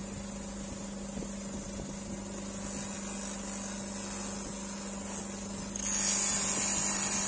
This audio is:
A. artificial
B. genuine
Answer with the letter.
B